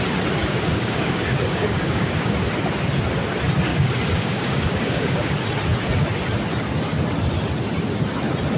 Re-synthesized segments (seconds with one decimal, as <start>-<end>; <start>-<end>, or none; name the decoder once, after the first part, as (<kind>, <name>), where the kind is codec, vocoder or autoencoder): 0.4-2.3 (codec, DAC); 3.7-5.3